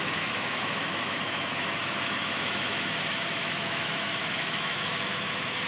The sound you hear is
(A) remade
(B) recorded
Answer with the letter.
A